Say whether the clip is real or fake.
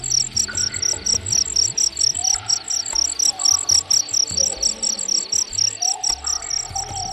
real